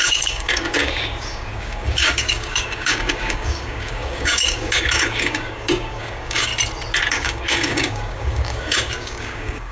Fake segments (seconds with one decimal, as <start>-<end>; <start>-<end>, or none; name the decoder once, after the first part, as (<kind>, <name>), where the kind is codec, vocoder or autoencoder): 0.0-6.5 (codec, DAC); 7.1-9.7

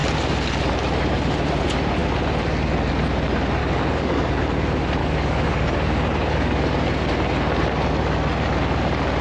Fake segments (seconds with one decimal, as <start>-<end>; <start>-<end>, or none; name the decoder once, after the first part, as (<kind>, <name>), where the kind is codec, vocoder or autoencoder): 3.6-4.4 (codec, DAC); 5.0-6.6

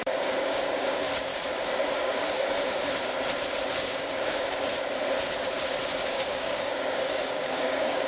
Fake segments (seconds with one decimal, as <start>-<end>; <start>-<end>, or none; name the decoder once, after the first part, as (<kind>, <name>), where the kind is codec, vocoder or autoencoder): 0.0-1.3 (codec, DAC); 1.9-2.4; 3.7-4.7; 5.9-8.1

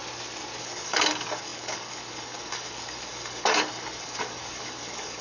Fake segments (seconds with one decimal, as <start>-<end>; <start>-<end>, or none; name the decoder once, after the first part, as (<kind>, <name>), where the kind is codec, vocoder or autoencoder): 0.6-5.2 (codec, DAC)

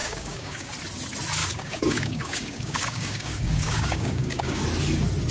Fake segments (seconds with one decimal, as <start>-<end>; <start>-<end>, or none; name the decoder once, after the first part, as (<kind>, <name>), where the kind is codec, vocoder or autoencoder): 0.0-0.7 (codec, DAC); 1.4-4.6